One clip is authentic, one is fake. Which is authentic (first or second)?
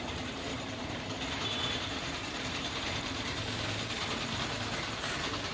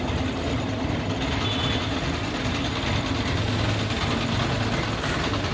second